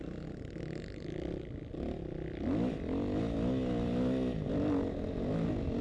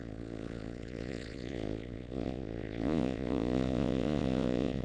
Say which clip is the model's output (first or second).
second